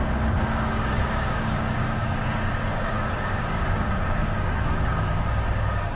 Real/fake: fake